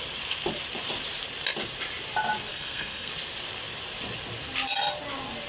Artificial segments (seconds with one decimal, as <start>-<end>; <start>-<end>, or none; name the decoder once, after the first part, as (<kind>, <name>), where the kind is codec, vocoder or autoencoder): 2.5-3.1 (codec, SNAC)